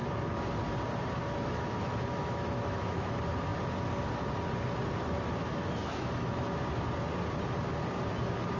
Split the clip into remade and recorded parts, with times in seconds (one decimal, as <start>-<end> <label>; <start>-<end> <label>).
0.0-1.2 recorded; 1.2-3.1 remade; 3.1-5.4 recorded; 5.4-6.6 remade; 6.6-8.6 recorded